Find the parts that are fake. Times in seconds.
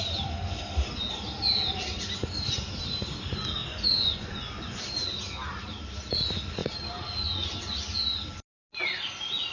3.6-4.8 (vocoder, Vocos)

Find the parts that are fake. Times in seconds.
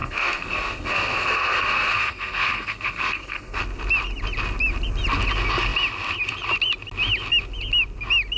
0.0-3.6 (codec, SNAC)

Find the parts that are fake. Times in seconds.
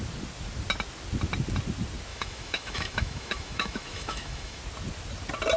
2.1-4.6 (autoencoder, DAC-VAE)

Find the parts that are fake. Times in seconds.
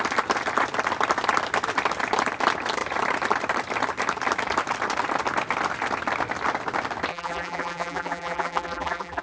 7.1-9.2 (vocoder, BigVGAN v2)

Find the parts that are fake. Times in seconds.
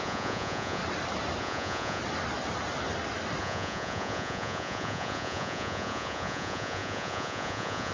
0.0-0.8 (vocoder, Vocos); 1.4-2.0; 3.4-7.9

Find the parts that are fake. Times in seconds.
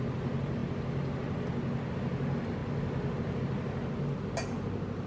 none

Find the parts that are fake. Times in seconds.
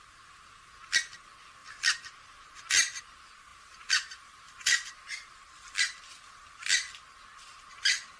1.6-2.6 (vocoder, BigVGAN v2); 3.5-5.3